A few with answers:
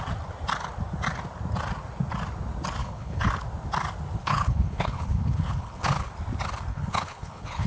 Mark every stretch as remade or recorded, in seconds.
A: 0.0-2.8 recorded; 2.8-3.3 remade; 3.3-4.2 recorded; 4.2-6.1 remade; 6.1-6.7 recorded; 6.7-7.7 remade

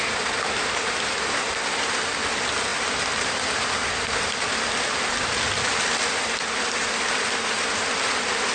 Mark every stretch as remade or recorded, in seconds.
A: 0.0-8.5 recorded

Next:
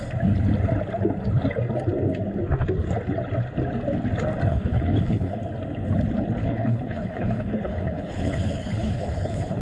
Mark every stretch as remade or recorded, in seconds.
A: 0.0-4.5 recorded; 4.5-5.4 remade; 5.4-6.4 recorded; 6.4-9.6 remade

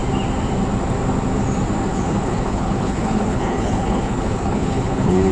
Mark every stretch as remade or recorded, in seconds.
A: 0.0-1.9 recorded; 1.9-5.3 remade

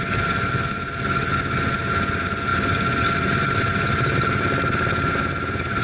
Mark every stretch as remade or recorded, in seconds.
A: 0.0-5.8 recorded

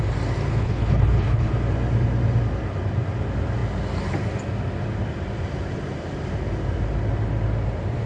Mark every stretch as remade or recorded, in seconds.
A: 0.0-0.5 recorded; 0.5-1.5 remade; 1.5-8.1 recorded

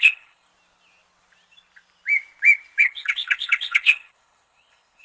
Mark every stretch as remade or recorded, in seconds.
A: 0.0-0.5 remade; 0.5-2.8 recorded; 2.8-5.0 remade